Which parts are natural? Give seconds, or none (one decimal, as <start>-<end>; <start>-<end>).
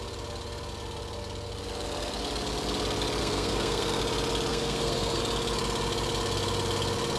0.0-3.2; 4.0-4.5; 5.2-7.2